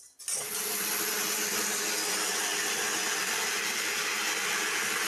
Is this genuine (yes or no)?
yes